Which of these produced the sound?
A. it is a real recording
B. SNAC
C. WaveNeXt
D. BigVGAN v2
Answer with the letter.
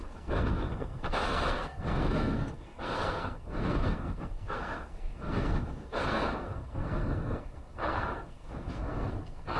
B